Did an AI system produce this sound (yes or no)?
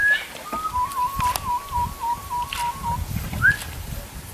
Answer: no